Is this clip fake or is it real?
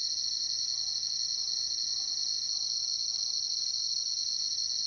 fake